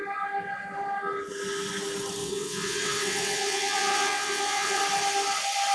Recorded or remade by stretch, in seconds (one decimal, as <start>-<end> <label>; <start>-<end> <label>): 0.0-2.2 recorded; 2.2-4.8 remade; 4.8-5.7 recorded

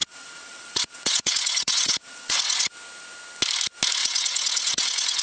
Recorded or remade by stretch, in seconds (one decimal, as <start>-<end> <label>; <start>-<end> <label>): 0.0-2.7 remade; 2.7-4.0 recorded; 4.0-5.2 remade